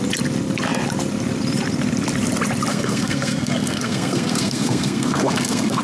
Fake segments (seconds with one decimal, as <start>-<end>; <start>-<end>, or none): 2.7-5.8